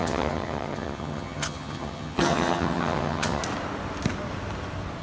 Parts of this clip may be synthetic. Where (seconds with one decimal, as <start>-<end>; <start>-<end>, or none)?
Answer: 0.0-3.4